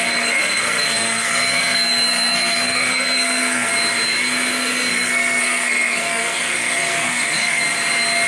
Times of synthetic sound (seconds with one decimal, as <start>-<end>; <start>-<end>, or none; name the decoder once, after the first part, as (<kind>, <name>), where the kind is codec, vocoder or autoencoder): 0.0-3.7 (codec, SNAC); 4.9-7.6